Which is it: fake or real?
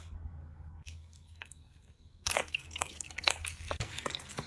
fake